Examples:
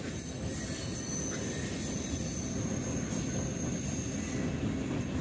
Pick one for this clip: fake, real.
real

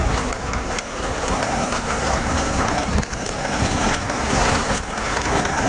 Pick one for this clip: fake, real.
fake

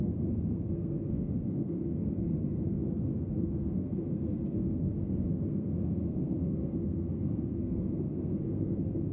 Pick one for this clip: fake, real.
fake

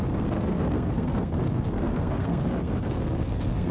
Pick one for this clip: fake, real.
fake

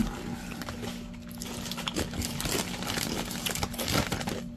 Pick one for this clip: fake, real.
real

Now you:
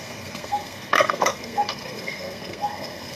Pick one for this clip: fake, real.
fake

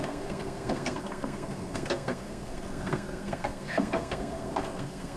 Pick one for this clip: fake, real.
fake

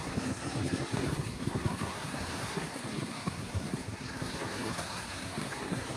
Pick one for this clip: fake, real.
fake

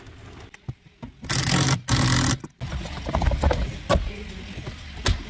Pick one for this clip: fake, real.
real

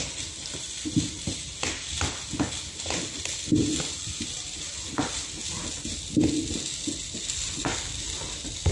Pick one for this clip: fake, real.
real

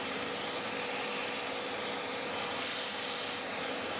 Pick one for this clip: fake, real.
real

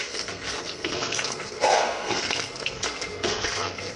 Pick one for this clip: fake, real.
fake